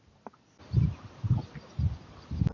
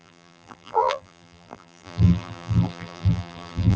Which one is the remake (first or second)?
second